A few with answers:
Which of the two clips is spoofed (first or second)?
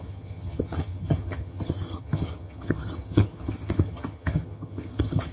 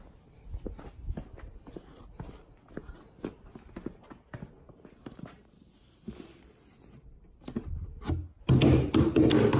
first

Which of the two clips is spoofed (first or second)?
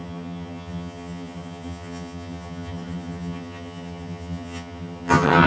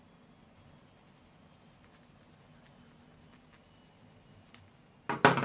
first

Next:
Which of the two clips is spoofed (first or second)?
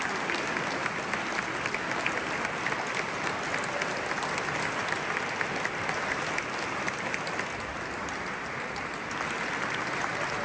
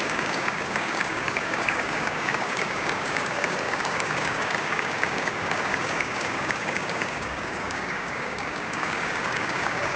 second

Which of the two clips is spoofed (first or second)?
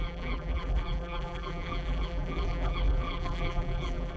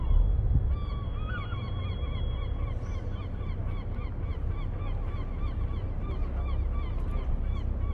first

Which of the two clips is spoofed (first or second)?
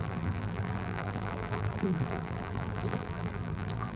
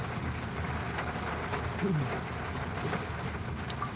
first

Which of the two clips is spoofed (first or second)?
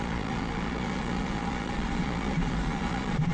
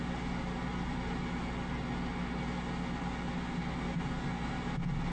first